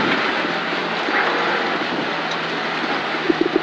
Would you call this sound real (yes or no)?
yes